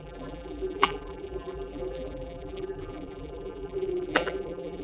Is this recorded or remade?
remade